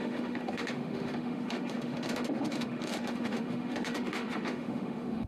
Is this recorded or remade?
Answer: remade